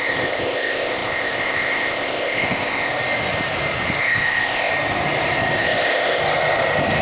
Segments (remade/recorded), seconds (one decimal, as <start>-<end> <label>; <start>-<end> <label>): 0.0-2.9 remade; 2.9-4.0 recorded; 4.0-4.7 remade; 4.7-5.6 recorded; 5.6-6.2 remade; 6.2-7.0 recorded